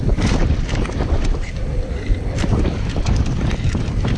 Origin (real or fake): fake